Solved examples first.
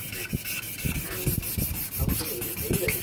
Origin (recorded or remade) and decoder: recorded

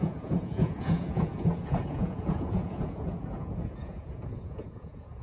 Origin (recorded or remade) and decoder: remade, vocoder, Vocos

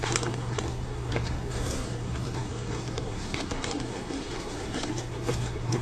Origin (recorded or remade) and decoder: remade, codec, SNAC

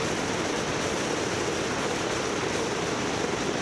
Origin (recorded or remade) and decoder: remade, vocoder, BigVGAN v2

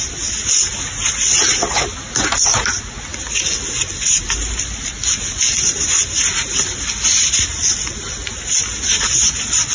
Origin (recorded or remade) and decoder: recorded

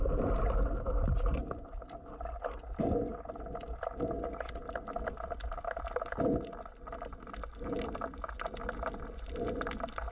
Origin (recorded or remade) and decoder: recorded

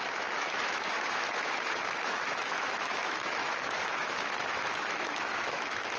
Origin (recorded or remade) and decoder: remade, autoencoder, DAC-VAE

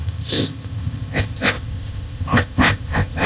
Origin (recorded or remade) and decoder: remade, codec, ZipCodec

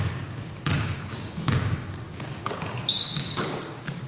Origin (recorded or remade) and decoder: remade, codec, DAC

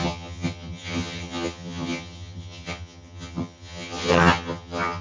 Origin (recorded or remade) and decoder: remade, vocoder, HiFi-GAN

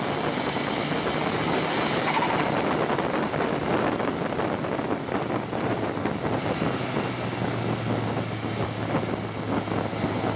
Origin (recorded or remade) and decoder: recorded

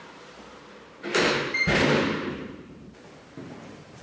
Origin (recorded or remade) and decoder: remade, vocoder, BigVGAN v2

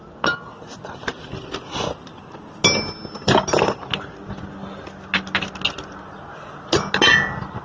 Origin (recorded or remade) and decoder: recorded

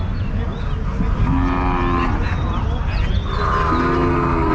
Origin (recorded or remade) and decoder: recorded